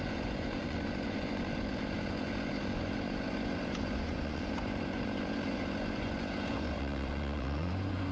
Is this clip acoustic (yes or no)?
no